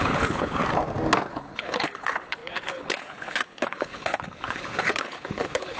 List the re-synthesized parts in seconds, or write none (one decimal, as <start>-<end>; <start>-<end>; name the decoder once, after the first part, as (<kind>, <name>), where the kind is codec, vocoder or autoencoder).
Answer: 0.0-0.6 (codec, HILCodec); 1.3-5.8